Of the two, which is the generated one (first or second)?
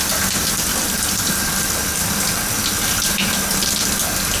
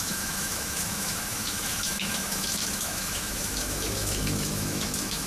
second